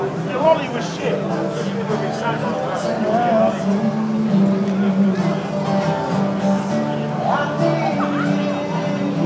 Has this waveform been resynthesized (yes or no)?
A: no